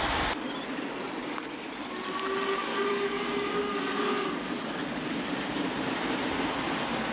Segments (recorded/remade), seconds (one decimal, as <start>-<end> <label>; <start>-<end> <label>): 0.0-2.7 recorded; 2.7-4.3 remade; 4.3-7.1 recorded